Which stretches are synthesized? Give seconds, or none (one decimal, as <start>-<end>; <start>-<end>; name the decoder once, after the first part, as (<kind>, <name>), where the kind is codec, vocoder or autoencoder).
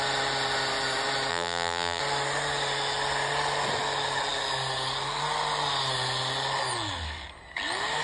1.3-2.0 (vocoder, BigVGAN v2)